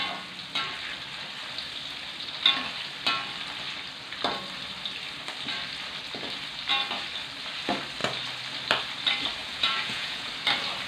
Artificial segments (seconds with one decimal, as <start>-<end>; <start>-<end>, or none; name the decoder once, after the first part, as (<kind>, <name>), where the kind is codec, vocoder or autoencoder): 9.4-10.3 (vocoder, Vocos)